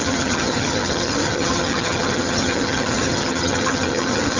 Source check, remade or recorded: remade